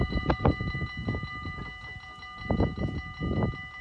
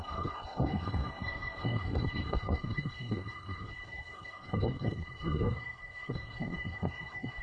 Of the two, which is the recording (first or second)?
first